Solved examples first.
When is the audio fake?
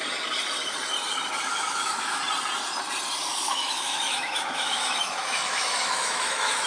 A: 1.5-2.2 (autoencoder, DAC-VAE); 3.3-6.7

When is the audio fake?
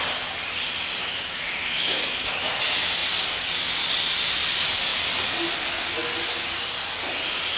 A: 1.0-2.6 (autoencoder, DAC-VAE)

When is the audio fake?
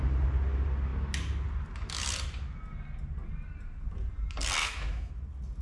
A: 4.6-5.1 (autoencoder, DAC-VAE)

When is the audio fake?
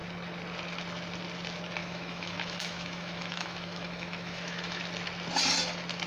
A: 1.8-4.8 (autoencoder, DAC-VAE)